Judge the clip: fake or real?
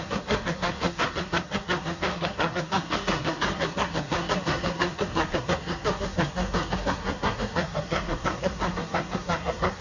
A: fake